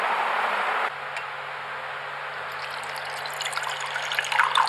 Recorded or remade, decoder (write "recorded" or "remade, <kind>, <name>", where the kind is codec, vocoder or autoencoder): recorded